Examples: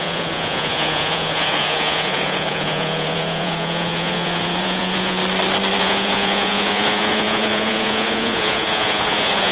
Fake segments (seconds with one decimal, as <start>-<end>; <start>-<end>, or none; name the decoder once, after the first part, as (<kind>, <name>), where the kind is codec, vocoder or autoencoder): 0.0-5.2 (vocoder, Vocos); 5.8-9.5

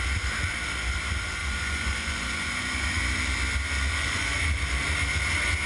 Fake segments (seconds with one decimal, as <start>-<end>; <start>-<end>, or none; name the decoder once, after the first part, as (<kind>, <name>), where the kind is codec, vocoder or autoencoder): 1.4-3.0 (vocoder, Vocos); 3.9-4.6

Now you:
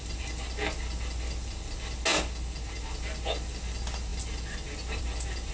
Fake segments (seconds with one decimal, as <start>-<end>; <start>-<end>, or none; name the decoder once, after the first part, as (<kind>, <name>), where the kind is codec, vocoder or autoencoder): none